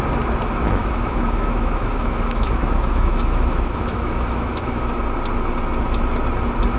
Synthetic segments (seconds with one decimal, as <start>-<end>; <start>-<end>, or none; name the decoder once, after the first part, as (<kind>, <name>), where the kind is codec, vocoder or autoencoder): 0.8-4.9 (autoencoder, DAC-VAE)